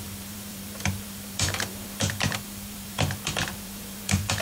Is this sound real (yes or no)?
no